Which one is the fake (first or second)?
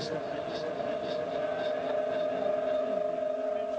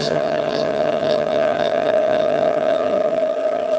second